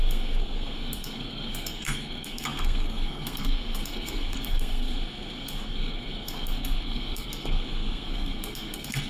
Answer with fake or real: fake